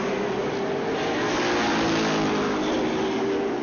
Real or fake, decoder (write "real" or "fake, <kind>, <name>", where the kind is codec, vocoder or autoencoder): real